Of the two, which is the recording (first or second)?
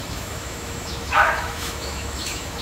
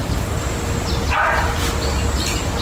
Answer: second